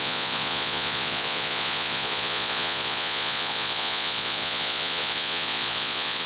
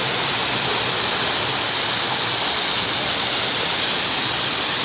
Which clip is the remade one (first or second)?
first